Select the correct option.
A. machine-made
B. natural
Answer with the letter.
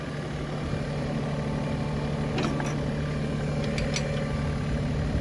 B